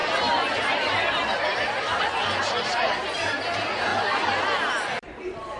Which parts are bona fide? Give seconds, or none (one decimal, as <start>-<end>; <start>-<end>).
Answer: 0.0-2.6; 3.9-4.7